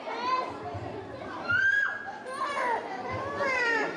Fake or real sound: fake